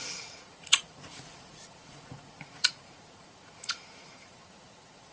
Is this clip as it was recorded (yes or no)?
no